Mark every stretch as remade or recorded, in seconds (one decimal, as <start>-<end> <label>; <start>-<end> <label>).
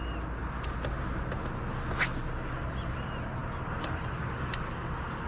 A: 0.0-5.3 recorded